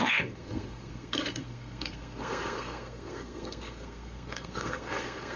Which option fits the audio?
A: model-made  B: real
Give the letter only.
A